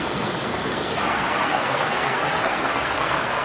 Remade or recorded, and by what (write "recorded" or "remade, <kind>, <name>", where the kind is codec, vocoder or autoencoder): remade, codec, SNAC